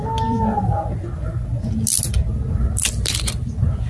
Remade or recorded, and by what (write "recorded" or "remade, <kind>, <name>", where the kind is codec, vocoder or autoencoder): recorded